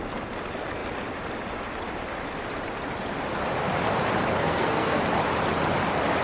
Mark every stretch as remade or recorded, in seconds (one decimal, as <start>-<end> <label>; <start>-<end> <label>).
0.0-4.4 recorded; 4.4-5.0 remade; 5.0-6.2 recorded